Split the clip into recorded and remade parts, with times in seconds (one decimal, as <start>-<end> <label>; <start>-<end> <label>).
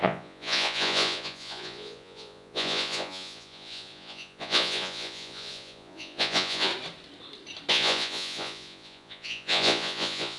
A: 0.0-6.7 remade; 6.7-7.7 recorded; 7.7-10.4 remade